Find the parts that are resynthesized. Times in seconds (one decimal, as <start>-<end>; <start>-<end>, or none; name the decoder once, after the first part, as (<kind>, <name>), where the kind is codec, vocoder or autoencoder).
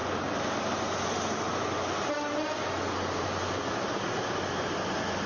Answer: none